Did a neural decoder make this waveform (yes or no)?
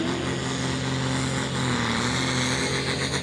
no